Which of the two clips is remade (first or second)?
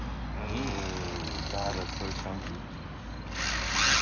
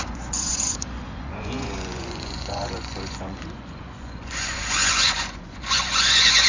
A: second